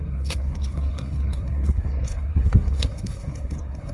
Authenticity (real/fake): fake